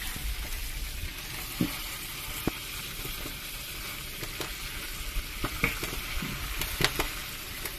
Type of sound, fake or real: real